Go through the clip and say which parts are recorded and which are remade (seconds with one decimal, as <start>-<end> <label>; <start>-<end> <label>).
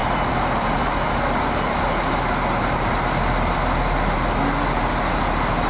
0.0-1.8 remade; 1.8-5.7 recorded